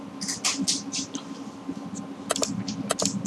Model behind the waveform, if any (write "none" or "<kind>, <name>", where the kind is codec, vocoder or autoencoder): none